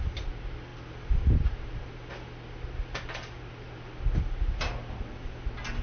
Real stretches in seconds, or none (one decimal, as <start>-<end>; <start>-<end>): 0.0-5.8